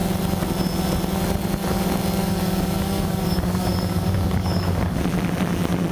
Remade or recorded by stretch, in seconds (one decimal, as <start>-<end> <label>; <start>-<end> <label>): 0.0-2.2 recorded; 2.2-5.0 remade; 5.0-5.9 recorded